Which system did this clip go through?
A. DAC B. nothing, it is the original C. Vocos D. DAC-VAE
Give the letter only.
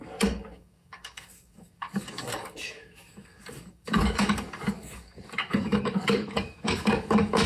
A